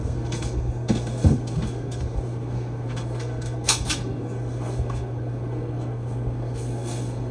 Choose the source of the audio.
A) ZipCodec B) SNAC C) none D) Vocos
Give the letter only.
B